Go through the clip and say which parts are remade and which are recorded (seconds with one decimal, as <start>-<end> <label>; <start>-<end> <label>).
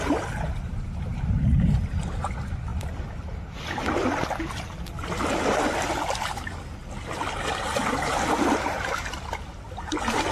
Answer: 0.0-1.1 recorded; 1.1-2.0 remade; 2.0-10.3 recorded